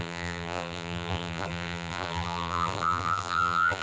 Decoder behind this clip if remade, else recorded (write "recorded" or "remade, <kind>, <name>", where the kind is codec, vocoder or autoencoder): remade, vocoder, BigVGAN v2